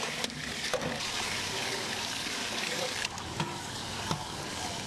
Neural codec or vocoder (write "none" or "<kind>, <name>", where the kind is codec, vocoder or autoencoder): codec, DAC